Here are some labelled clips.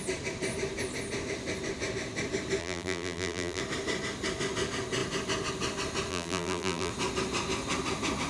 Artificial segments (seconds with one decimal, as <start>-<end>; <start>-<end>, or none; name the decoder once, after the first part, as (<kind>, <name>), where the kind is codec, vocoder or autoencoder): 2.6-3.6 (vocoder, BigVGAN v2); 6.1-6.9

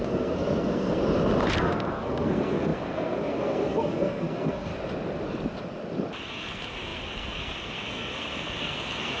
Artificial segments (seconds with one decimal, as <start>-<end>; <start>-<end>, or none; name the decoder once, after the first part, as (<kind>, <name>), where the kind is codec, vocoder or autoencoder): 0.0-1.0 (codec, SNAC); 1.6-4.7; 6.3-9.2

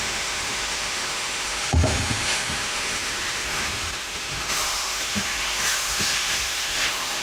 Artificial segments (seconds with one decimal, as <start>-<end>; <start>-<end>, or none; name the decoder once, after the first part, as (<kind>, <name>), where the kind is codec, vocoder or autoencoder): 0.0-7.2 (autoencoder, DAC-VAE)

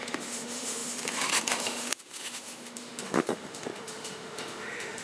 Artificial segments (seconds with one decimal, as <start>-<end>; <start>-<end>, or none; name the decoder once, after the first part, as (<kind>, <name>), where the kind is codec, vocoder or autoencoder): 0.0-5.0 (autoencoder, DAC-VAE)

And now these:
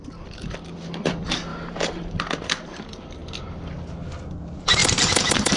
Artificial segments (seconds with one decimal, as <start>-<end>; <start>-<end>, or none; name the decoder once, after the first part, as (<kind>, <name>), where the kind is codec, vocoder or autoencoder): 1.5-2.2 (vocoder, BigVGAN v2); 4.8-5.6